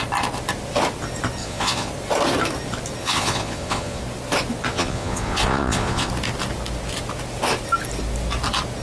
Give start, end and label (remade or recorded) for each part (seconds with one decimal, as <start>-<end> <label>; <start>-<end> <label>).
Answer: 0.0-1.4 recorded; 1.4-1.9 remade; 1.9-3.0 recorded; 3.0-4.0 remade; 4.0-4.7 recorded; 4.7-6.1 remade; 6.1-8.8 recorded